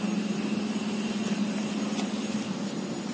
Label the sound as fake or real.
real